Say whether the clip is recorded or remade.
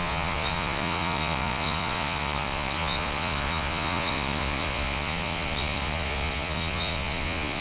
remade